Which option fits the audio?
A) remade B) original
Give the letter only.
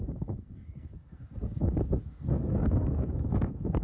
A